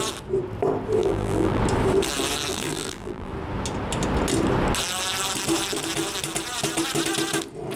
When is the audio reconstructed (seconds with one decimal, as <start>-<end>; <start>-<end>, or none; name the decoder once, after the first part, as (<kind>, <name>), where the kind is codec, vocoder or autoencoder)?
1.0-1.6 (vocoder, BigVGAN v2); 2.5-3.3